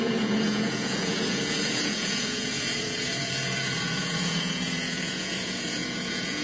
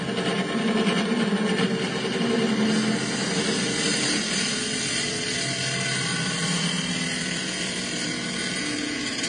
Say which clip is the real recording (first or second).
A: second